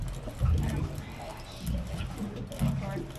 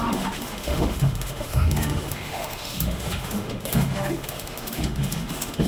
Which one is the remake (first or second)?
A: second